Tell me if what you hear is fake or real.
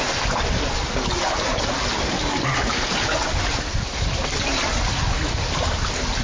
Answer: real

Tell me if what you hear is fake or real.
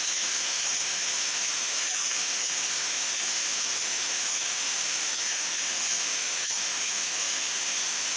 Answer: fake